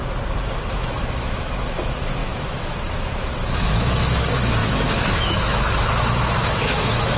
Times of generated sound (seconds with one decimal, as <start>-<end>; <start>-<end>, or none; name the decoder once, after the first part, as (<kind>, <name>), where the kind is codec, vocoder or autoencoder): 0.7-7.2 (autoencoder, DAC-VAE)